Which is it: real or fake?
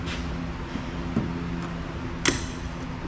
real